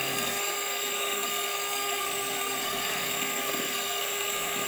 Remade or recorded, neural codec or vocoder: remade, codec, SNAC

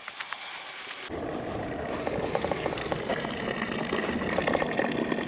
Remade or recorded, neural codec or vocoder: recorded